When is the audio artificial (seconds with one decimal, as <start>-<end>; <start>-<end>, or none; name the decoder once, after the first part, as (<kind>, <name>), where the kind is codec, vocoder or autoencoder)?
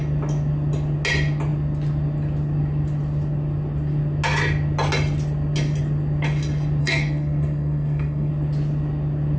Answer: 6.8-8.3 (codec, SNAC)